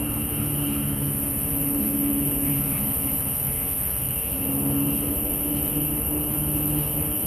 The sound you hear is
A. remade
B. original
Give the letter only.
A